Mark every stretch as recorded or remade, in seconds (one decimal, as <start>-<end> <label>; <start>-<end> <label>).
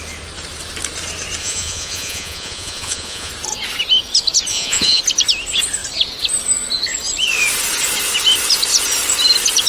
0.0-1.4 recorded; 1.4-3.3 remade; 3.3-4.5 recorded; 4.5-5.0 remade; 5.0-9.7 recorded